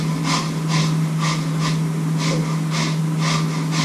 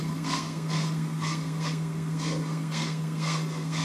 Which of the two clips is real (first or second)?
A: first